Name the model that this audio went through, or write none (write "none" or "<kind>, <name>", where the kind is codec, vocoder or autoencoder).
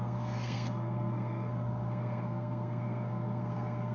codec, SNAC